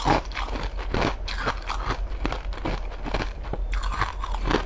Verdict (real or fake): real